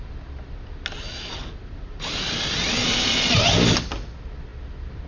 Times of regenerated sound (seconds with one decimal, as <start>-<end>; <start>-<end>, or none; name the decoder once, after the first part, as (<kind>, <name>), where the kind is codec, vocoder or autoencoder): none